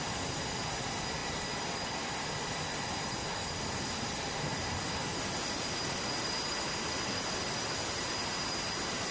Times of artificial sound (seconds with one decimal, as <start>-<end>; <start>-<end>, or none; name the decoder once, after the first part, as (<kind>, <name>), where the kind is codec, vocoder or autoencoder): none